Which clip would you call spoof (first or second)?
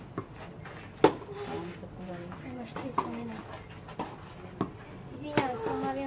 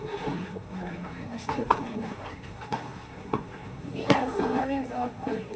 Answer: second